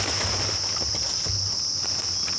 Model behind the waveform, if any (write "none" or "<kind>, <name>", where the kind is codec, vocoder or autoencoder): none